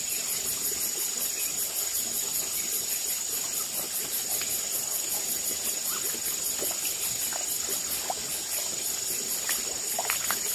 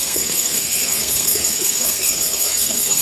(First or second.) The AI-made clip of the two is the second